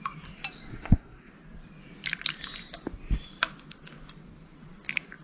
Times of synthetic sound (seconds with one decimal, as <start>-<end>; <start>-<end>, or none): 0.7-1.3